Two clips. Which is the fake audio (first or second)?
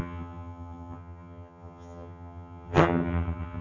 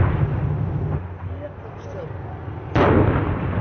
first